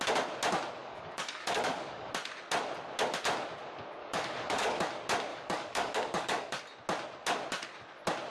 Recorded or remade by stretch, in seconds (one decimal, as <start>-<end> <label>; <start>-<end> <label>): 0.0-0.8 recorded; 0.8-2.1 remade; 2.1-4.0 recorded; 4.0-4.8 remade; 4.8-5.3 recorded; 5.3-6.6 remade; 6.6-8.3 recorded

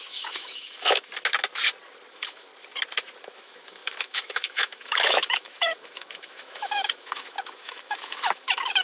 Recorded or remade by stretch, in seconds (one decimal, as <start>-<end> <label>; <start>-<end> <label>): 0.0-1.1 remade; 1.1-2.1 recorded; 2.1-2.5 remade; 2.5-3.3 recorded; 3.3-8.8 remade

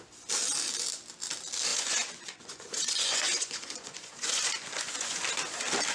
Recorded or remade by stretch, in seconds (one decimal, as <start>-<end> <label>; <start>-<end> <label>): 0.0-1.7 recorded; 1.7-5.2 remade; 5.2-5.9 recorded

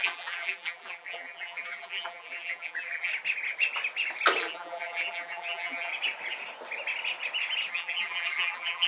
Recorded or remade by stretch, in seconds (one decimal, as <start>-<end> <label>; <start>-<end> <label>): 0.0-3.1 remade; 3.1-4.4 recorded; 4.4-5.9 remade; 5.9-7.7 recorded; 7.7-8.9 remade

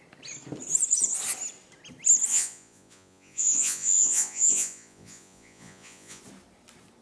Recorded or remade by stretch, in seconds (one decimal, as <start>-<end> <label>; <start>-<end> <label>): 0.0-2.3 recorded; 2.3-6.2 remade; 6.2-7.0 recorded

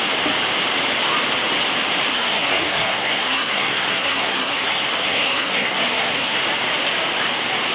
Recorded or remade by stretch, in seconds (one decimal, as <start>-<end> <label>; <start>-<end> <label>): 0.0-2.1 recorded; 2.1-6.4 remade; 6.4-7.7 recorded

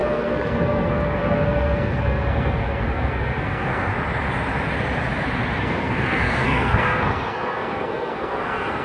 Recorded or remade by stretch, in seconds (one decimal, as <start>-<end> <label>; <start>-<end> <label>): 0.0-3.9 remade; 3.9-5.6 recorded; 5.6-8.8 remade

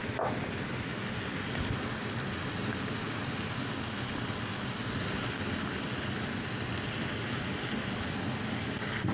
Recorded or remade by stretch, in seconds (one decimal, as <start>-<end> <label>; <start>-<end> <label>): 0.0-9.1 recorded